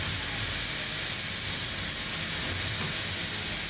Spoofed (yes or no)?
no